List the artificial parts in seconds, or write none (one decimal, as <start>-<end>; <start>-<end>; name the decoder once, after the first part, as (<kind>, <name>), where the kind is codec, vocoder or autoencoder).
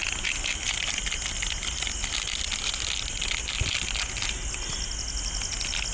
none